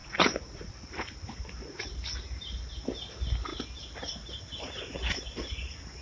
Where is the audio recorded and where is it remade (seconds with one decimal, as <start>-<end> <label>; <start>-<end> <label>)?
0.0-0.7 remade; 0.7-6.0 recorded